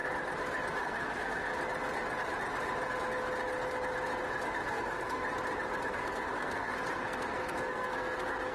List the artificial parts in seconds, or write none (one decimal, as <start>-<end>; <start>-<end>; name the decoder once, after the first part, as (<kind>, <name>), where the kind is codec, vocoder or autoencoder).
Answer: 0.8-1.5 (codec, SNAC); 4.7-5.2; 5.9-8.5